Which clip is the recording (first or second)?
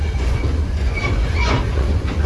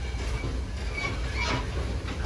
second